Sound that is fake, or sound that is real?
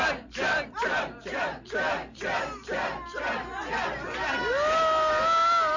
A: real